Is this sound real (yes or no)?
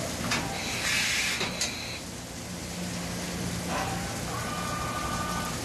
yes